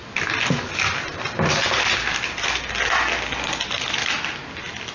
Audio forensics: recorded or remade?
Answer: recorded